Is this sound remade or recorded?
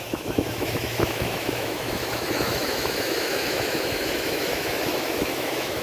remade